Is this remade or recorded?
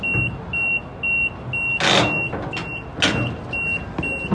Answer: recorded